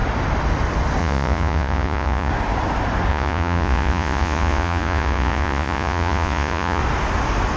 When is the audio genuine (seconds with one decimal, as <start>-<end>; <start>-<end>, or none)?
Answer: 0.0-1.0; 2.3-3.1; 6.8-7.6